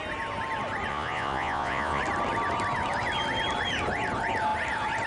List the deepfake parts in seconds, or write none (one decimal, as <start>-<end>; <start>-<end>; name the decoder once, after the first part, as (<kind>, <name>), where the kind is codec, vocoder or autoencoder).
0.9-2.0 (vocoder, Vocos)